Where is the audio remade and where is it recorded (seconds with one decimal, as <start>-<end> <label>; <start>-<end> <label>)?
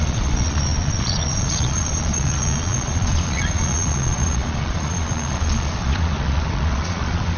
0.0-7.4 remade